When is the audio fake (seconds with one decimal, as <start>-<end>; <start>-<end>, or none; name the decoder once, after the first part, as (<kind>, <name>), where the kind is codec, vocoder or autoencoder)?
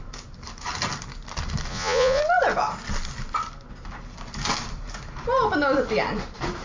1.7-2.2 (vocoder, Vocos)